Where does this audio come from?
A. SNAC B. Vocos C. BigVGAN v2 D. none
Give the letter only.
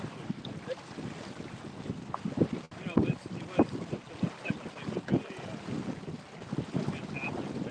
D